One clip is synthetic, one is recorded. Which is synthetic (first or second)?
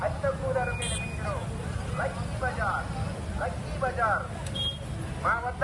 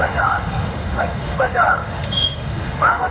second